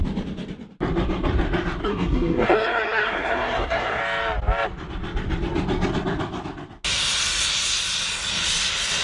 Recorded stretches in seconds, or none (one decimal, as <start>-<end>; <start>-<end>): 0.0-1.8; 4.0-9.0